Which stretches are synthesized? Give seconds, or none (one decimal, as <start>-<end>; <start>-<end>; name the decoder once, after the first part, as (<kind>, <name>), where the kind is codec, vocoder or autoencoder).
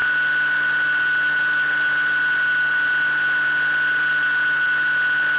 none